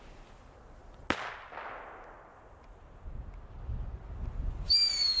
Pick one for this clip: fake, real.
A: real